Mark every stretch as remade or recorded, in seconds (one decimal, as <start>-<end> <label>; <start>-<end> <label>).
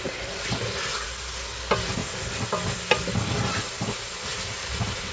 0.0-5.1 recorded